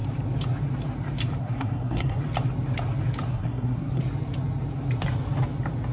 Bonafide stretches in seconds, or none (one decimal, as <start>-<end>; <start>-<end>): 0.0-1.4; 2.2-3.3; 4.0-5.9